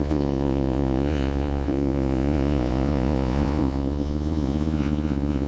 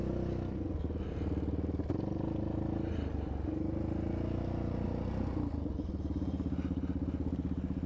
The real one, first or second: second